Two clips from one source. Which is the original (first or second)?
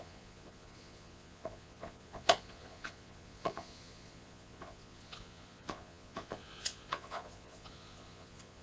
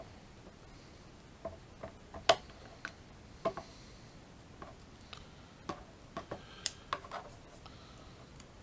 second